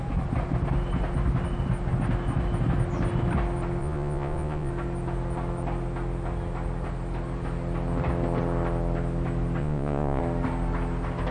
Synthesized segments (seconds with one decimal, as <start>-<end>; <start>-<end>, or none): 3.8-4.7; 9.6-10.2